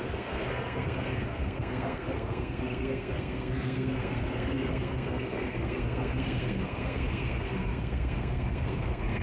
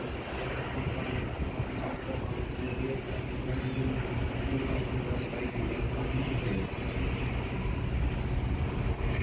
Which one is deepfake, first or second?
first